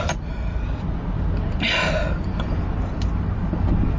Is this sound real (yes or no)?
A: yes